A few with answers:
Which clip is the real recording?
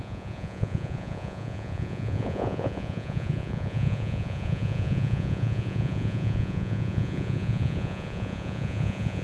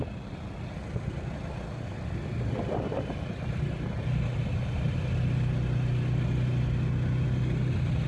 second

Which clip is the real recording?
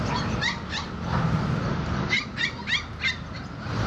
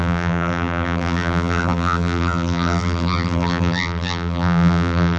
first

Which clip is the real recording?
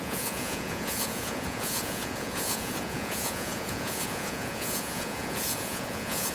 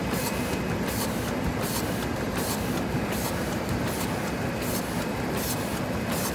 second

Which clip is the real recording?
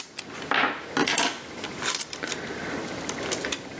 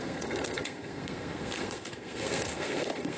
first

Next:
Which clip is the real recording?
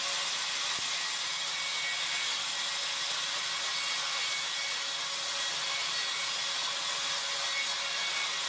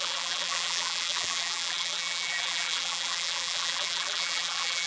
first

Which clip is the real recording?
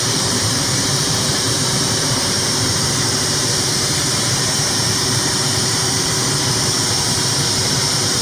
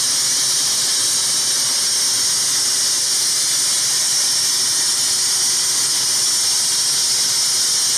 second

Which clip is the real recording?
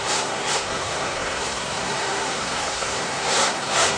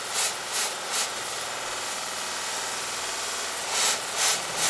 second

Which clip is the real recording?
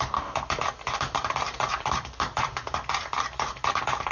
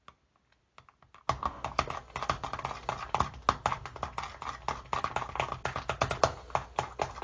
second